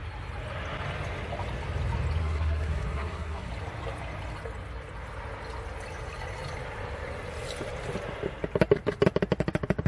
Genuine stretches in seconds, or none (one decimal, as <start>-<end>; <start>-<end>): 0.0-2.2; 3.5-9.9